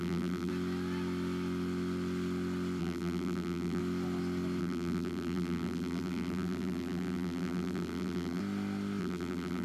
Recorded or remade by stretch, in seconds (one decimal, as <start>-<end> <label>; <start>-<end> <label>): 0.0-0.5 remade; 0.5-2.8 recorded; 2.8-3.8 remade; 3.8-4.6 recorded; 4.6-8.4 remade; 8.4-9.0 recorded; 9.0-9.6 remade